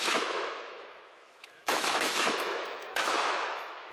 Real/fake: fake